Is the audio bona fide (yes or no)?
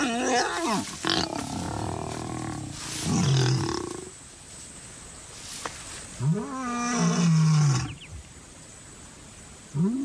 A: yes